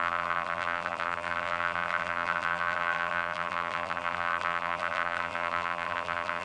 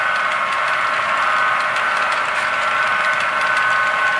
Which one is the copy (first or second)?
first